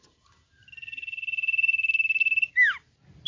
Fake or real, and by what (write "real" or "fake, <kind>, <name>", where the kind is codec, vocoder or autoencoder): real